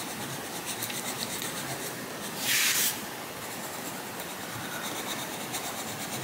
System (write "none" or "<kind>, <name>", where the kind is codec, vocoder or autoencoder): none